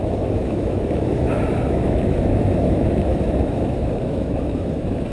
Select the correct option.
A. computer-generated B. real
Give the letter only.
A